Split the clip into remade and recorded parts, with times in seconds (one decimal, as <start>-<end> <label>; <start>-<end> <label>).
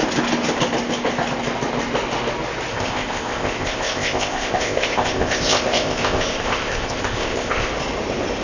0.0-2.7 recorded; 2.7-7.7 remade; 7.7-8.4 recorded